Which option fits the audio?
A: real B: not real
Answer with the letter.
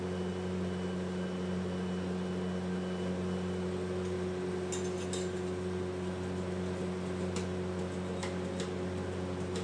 A